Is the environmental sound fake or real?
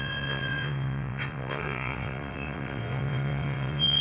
fake